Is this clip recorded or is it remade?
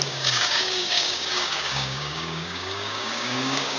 remade